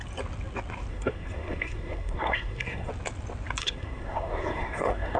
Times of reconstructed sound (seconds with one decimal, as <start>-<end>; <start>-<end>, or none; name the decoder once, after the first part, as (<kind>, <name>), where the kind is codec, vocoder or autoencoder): 0.9-2.9 (codec, SNAC); 3.6-5.2